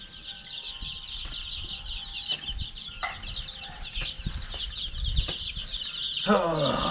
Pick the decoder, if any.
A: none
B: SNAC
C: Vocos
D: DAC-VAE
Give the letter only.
A